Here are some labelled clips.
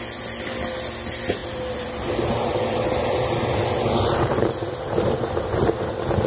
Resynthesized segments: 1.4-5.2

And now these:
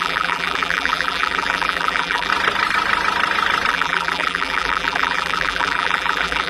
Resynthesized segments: 0.0-2.3; 3.7-6.5

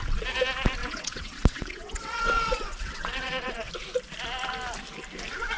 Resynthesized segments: 0.8-3.7

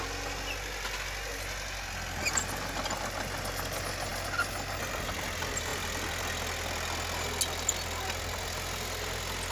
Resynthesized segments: none